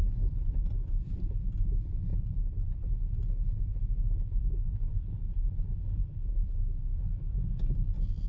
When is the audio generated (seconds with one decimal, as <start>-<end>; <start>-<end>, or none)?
none